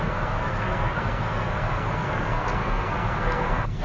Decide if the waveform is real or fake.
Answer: fake